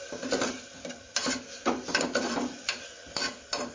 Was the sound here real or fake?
real